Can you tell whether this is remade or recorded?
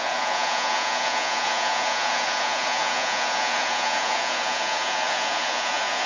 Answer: remade